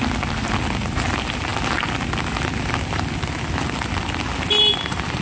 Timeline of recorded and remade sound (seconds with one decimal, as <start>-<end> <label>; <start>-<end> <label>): 0.0-5.2 recorded